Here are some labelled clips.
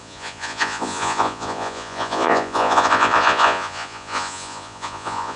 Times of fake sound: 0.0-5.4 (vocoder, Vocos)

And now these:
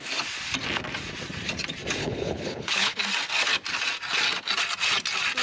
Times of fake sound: 2.0-3.0 (codec, HILCodec)